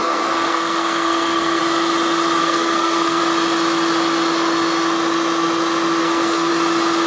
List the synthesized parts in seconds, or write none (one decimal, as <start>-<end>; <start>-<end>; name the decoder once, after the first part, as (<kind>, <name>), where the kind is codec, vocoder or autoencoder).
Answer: 0.0-1.6 (codec, SNAC); 2.4-3.2; 6.0-6.5